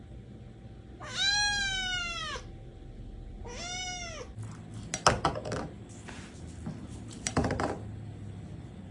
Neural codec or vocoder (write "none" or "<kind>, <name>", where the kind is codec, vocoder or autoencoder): none